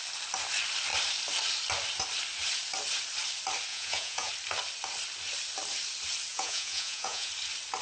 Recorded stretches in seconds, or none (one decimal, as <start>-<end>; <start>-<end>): 0.0-3.7; 4.3-6.3; 7.3-7.8